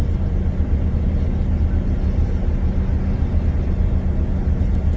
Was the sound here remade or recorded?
recorded